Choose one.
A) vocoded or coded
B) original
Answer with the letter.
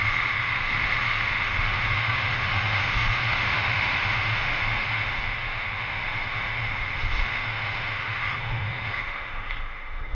A